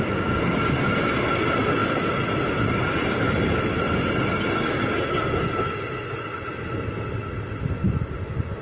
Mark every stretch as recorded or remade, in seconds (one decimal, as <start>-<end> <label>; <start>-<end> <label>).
0.0-8.6 recorded